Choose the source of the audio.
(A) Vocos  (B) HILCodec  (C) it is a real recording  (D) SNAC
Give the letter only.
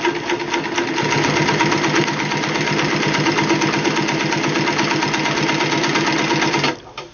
C